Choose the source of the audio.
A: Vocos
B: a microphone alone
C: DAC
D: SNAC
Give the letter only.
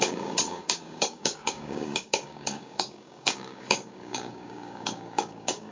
C